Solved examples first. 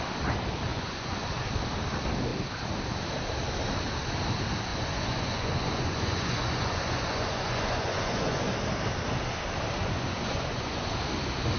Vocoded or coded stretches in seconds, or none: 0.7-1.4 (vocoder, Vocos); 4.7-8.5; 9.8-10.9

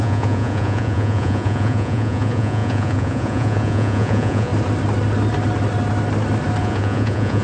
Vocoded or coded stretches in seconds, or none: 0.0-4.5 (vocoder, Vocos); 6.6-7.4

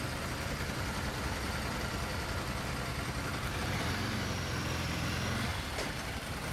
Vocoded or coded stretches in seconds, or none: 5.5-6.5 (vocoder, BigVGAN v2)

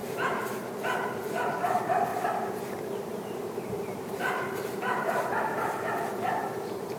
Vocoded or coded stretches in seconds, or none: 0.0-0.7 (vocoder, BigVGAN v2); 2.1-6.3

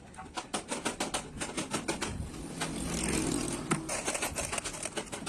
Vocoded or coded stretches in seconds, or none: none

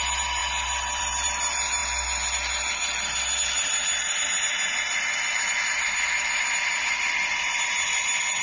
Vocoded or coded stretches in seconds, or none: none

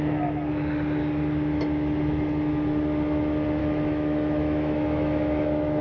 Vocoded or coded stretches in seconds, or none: 3.6-5.8 (autoencoder, DAC-VAE)